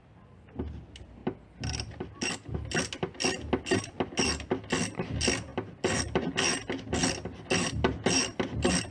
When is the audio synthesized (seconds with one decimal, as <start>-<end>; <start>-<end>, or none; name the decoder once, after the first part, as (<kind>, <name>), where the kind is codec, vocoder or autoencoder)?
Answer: none